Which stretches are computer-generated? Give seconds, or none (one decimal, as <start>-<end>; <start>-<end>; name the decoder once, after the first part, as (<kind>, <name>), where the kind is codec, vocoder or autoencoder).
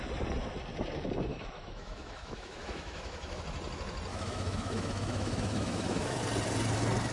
1.3-3.4 (autoencoder, DAC-VAE); 4.1-6.2